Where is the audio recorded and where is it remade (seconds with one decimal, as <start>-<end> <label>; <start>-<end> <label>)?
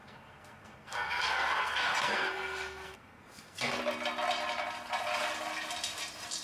0.0-3.8 remade; 3.8-6.4 recorded